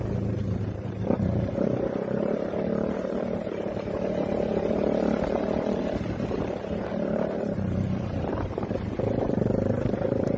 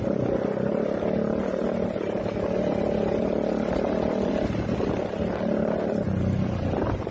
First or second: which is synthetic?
first